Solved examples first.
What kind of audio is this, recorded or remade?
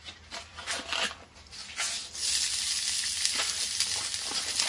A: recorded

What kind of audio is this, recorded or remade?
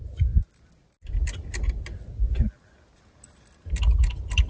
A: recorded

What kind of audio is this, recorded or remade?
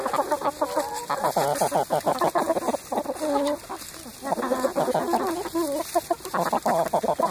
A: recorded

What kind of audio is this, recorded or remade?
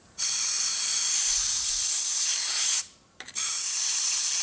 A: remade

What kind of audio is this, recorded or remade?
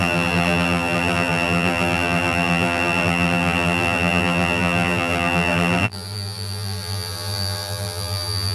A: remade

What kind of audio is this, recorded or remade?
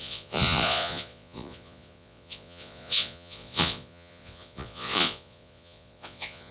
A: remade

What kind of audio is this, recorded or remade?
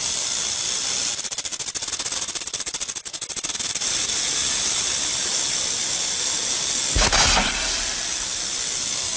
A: recorded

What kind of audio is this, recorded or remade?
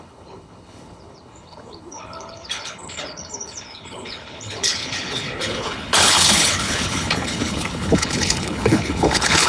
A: remade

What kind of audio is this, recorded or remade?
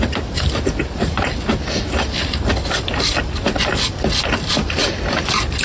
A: recorded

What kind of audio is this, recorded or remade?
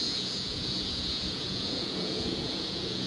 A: remade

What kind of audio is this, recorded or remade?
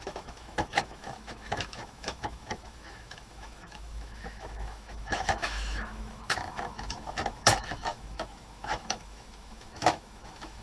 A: remade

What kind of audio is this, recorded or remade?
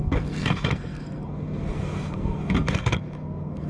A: remade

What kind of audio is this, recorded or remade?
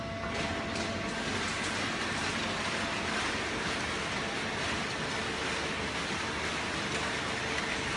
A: recorded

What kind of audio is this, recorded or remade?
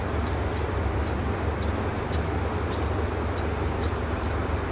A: recorded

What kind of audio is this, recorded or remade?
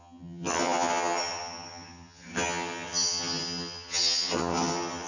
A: remade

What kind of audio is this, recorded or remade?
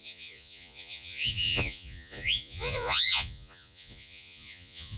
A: remade